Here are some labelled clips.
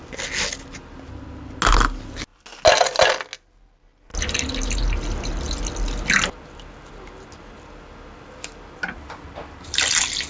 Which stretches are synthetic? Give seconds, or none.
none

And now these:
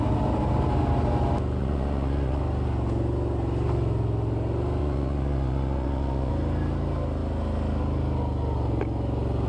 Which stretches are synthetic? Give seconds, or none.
1.6-2.4 (vocoder, Vocos); 4.8-6.3

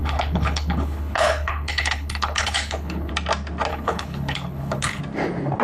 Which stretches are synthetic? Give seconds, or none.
0.0-3.1 (codec, HILCodec); 3.7-5.0

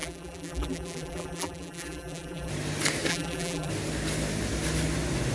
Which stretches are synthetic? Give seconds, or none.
0.0-2.5 (vocoder, BigVGAN v2); 3.1-3.7

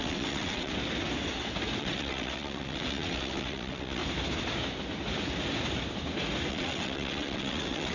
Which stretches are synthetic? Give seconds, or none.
0.0-0.7 (vocoder, WaveNeXt); 1.8-4.0; 6.5-7.9